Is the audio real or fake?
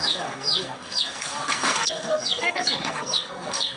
fake